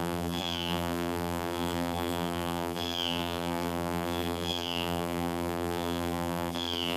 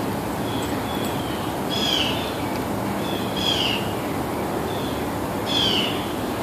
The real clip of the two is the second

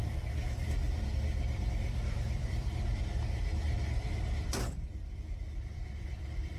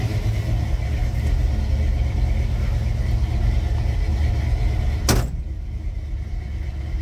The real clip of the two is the second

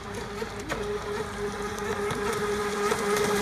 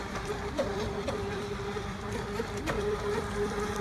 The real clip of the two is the first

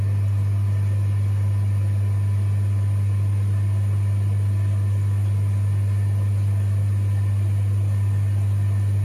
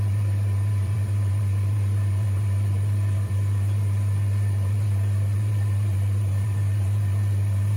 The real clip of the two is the first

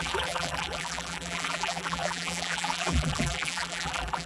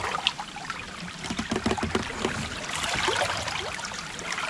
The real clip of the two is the second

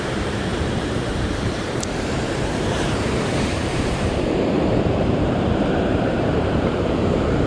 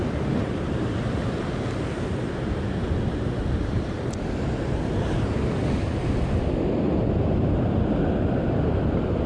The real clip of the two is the second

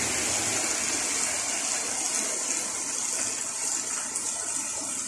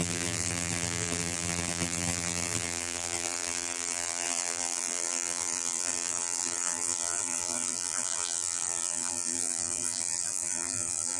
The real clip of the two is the first